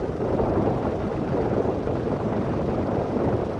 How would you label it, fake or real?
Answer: fake